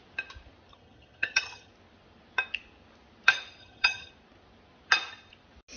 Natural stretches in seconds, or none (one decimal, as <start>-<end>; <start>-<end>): 0.0-0.7; 1.7-3.6; 4.1-5.8